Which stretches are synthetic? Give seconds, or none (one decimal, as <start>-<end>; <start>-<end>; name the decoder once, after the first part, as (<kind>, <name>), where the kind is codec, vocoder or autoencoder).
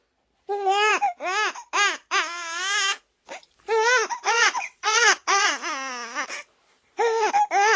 4.2-5.5 (vocoder, WaveNeXt)